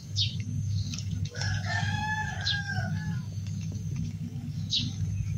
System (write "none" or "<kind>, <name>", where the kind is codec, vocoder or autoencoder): codec, DAC